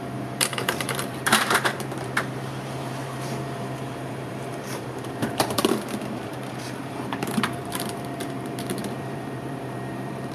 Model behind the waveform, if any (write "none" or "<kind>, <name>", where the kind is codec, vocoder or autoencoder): vocoder, BigVGAN v2